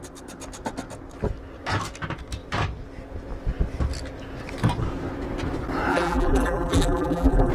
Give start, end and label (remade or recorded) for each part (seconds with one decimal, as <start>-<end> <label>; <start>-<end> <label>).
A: 0.0-5.9 recorded; 5.9-7.5 remade